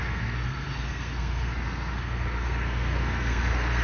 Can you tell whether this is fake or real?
fake